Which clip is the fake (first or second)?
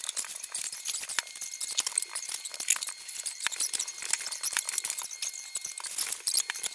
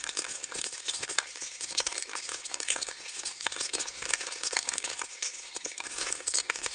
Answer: second